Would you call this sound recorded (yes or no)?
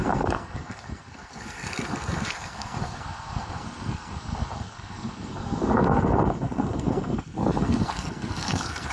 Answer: no